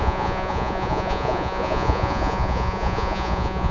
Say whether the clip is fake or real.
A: fake